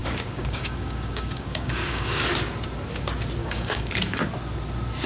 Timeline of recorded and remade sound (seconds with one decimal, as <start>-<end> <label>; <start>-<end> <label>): 0.0-2.2 remade; 2.2-3.4 recorded; 3.4-3.9 remade; 3.9-5.1 recorded